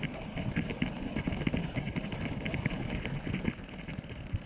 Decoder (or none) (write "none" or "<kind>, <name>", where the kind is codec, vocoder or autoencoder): none